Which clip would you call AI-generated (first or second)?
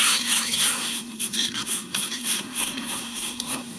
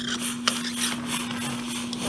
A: first